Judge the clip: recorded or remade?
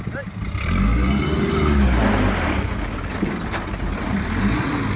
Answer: recorded